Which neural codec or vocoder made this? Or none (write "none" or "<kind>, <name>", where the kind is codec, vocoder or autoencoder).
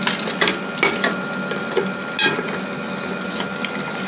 none